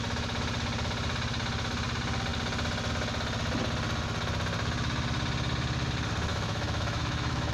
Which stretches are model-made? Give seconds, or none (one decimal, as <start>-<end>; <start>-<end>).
6.3-7.5